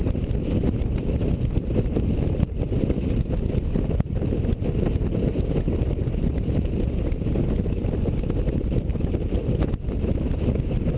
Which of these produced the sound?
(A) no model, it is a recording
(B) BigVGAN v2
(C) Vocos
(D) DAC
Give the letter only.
A